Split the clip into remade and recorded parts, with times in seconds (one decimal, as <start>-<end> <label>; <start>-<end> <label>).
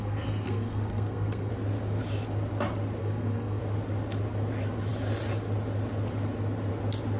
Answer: 0.0-1.5 remade; 1.5-3.0 recorded; 3.0-3.6 remade; 3.6-7.2 recorded